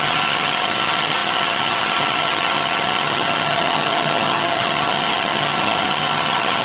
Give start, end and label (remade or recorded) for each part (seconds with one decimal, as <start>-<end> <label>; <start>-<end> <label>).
0.0-6.6 remade